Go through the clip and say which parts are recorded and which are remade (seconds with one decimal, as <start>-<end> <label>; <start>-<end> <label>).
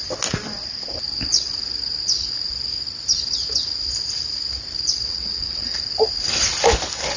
0.0-5.1 recorded; 5.1-5.8 remade; 5.8-7.2 recorded